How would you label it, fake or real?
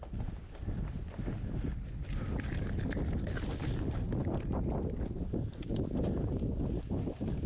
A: real